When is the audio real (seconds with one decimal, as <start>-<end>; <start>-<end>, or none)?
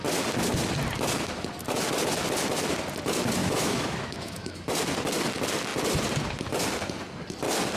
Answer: 0.0-3.4; 4.6-7.8